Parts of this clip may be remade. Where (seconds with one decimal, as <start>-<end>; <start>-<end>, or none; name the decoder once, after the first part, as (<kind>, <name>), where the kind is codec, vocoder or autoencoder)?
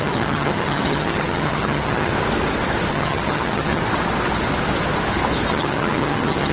0.0-2.1 (vocoder, HiFi-GAN); 2.9-3.8; 5.5-6.5